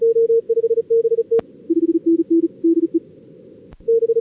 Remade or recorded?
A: recorded